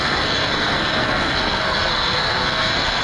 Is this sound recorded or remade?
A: remade